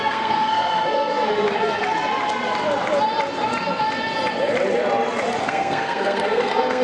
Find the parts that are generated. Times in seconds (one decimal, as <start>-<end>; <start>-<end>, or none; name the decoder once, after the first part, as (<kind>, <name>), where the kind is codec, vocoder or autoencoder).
0.0-1.3 (codec, SNAC); 5.4-6.8